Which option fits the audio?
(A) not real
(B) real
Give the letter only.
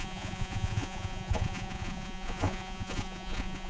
A